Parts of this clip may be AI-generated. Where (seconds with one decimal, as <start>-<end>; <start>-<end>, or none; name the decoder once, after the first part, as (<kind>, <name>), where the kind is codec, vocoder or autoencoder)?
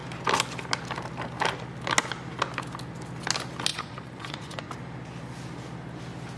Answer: 3.7-4.7 (vocoder, Vocos)